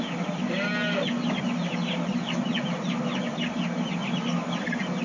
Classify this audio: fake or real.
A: real